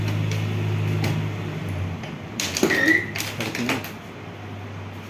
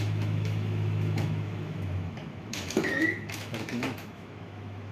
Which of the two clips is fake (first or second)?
second